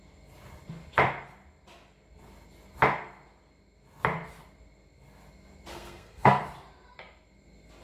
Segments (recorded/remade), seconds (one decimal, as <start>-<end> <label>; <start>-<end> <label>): 0.0-5.7 recorded; 5.7-6.4 remade; 6.4-7.8 recorded